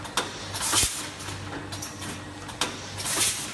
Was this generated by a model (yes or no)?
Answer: no